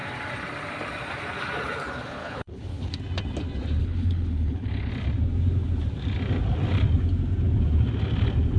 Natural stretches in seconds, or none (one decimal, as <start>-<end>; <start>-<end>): 0.0-2.2; 2.9-3.8; 4.9-8.6